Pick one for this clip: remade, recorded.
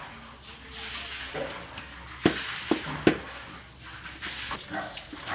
recorded